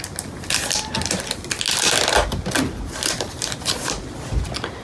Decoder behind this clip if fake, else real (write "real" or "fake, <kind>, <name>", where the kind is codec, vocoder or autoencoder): real